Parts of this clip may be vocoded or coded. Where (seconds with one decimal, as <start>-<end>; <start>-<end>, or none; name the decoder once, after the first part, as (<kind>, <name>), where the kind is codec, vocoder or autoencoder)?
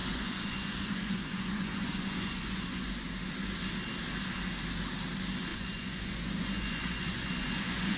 0.0-2.9 (vocoder, Vocos); 5.5-8.0